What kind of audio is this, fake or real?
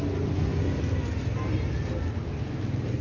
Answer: real